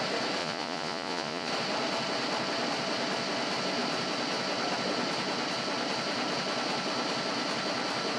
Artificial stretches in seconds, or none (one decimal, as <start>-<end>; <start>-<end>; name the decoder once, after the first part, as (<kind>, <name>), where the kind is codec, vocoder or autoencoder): 0.4-1.5 (vocoder, Vocos)